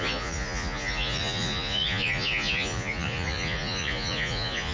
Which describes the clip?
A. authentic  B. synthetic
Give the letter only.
B